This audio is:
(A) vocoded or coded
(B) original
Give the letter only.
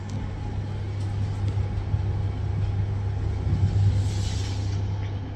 B